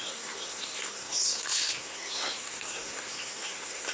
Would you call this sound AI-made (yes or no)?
yes